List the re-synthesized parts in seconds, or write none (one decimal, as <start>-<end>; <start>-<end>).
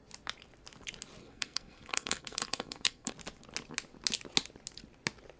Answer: 1.2-3.1